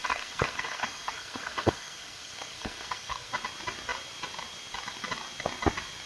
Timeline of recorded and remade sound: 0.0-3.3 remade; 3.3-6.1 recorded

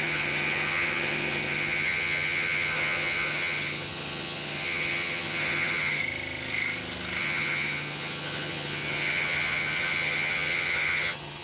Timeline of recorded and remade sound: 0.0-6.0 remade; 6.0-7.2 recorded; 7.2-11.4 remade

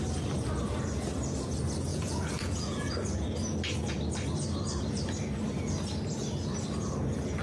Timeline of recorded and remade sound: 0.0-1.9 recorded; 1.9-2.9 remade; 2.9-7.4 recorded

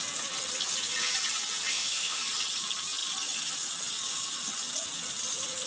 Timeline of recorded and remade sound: 0.0-1.7 recorded; 1.7-2.2 remade; 2.2-5.7 recorded